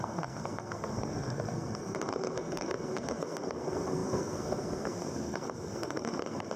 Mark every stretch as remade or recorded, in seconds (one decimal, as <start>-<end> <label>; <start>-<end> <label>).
0.0-6.6 remade